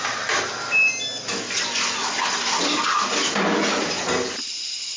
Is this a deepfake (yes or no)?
no